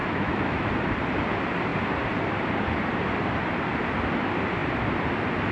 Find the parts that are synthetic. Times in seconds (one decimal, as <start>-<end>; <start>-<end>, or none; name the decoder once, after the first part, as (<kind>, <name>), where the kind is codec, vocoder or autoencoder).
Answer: 0.0-0.7 (autoencoder, DAC-VAE)